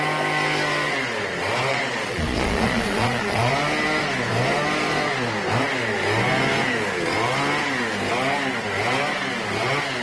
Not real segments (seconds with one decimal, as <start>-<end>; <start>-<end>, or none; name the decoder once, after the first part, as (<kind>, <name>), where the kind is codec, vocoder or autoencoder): 1.7-3.5 (vocoder, Vocos)